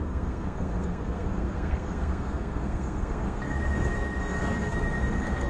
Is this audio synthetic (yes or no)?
yes